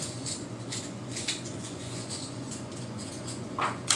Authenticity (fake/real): fake